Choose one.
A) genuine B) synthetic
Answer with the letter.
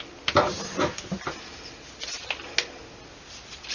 A